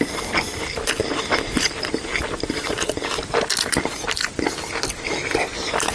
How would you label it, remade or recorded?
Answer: recorded